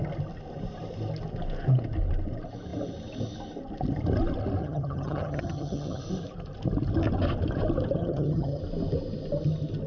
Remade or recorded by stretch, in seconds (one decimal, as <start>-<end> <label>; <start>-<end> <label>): 0.0-4.6 recorded; 4.6-6.0 remade; 6.0-8.0 recorded; 8.0-8.6 remade; 8.6-9.9 recorded